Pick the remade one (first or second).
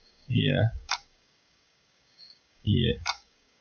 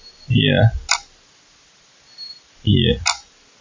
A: first